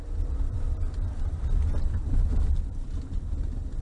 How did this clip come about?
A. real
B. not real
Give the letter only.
A